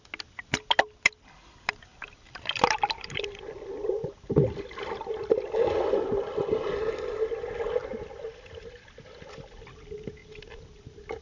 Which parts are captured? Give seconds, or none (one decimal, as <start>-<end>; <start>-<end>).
0.0-11.2